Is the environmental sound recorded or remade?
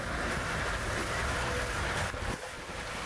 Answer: recorded